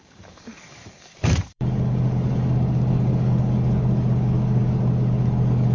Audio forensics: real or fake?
fake